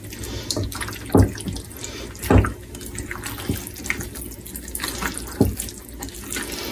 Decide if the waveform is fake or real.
real